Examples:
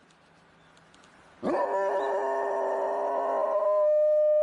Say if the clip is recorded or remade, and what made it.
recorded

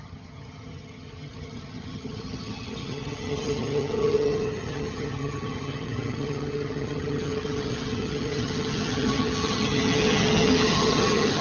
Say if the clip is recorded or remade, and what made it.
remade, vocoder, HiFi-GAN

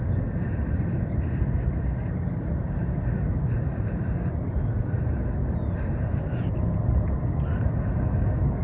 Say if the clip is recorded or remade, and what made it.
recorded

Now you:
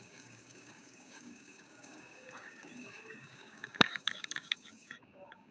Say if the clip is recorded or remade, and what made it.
remade, codec, DAC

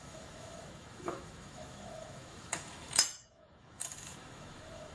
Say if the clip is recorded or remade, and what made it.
remade, autoencoder, DAC-VAE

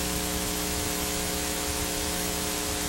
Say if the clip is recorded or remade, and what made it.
remade, autoencoder, DAC-VAE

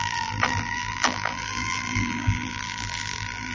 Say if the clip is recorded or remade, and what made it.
remade, vocoder, BigVGAN v2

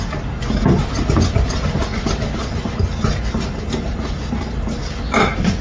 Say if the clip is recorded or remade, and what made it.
recorded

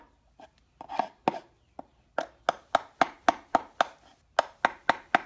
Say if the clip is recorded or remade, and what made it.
recorded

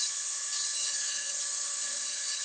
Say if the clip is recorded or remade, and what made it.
remade, codec, HILCodec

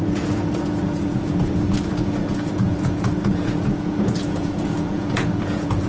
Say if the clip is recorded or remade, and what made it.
remade, vocoder, Vocos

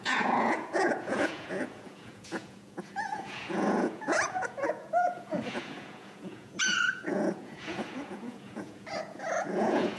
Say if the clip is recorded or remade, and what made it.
remade, vocoder, Vocos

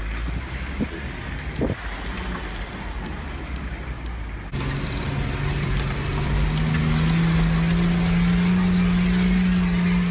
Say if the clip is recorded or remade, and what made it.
recorded